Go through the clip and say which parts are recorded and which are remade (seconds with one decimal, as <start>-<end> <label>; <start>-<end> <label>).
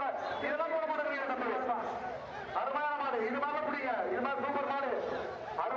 0.0-5.8 recorded